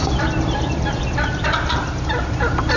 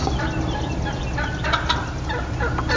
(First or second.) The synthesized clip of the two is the first